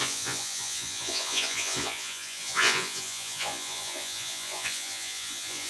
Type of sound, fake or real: fake